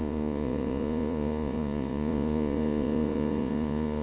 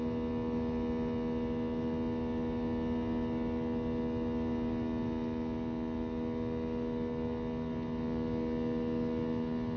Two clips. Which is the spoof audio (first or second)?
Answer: first